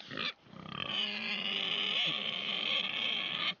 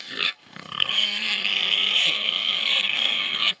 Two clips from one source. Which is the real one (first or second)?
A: first